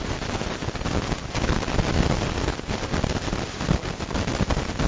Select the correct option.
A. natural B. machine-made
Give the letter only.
A